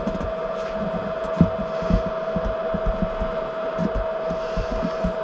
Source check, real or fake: real